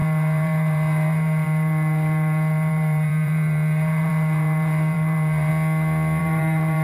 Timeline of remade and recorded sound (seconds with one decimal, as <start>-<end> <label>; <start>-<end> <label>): 0.0-5.5 remade; 5.5-6.2 recorded; 6.2-6.8 remade